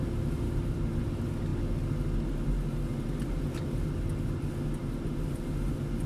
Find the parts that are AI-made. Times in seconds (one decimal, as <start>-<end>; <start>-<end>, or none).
none